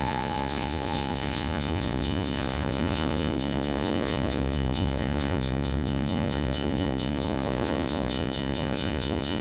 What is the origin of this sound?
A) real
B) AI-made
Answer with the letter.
B